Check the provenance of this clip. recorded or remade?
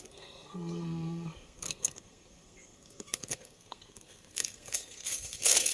remade